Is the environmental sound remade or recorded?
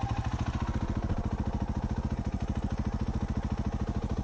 recorded